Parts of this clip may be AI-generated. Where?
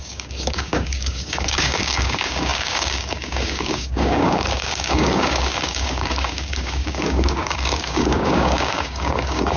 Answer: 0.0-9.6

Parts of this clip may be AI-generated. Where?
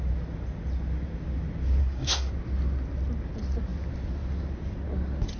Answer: 1.8-2.3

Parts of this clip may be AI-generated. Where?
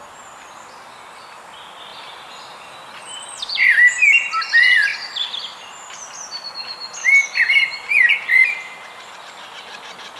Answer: none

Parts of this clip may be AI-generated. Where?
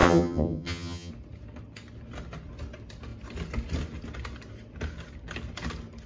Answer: 0.0-1.1